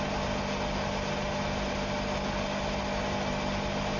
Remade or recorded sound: recorded